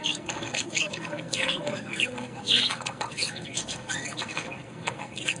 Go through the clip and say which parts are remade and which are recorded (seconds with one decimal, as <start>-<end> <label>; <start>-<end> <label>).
0.0-5.4 remade